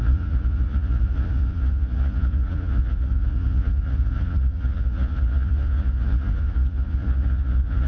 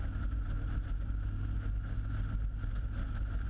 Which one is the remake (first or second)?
first